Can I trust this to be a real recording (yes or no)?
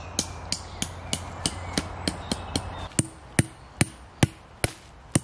yes